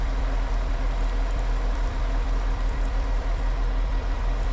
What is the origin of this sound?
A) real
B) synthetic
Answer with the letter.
B